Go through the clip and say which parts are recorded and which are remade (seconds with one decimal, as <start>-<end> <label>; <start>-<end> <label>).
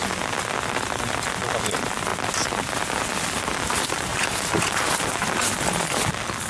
0.0-4.1 recorded; 4.1-5.3 remade; 5.3-6.5 recorded